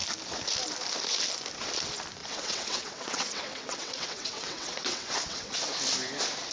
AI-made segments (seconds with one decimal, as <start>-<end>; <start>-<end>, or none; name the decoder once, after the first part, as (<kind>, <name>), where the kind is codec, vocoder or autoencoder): 2.2-5.7 (vocoder, WaveNeXt)